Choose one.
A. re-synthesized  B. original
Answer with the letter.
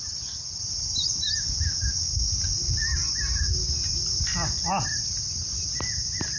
B